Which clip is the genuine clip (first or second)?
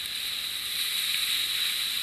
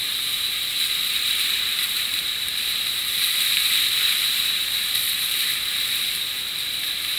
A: first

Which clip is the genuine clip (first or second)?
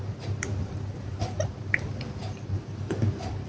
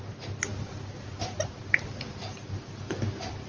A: second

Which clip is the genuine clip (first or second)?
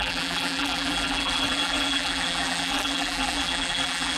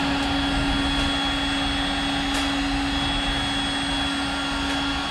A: second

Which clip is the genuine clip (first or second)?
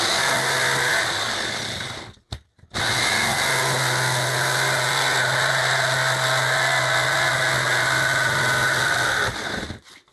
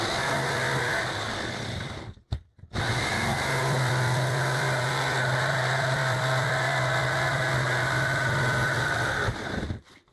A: first